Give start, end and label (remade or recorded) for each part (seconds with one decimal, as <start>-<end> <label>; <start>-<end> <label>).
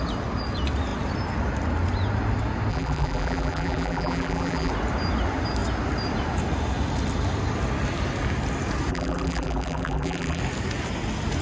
0.0-2.7 recorded; 2.7-4.7 remade; 4.7-8.9 recorded; 8.9-10.4 remade; 10.4-11.4 recorded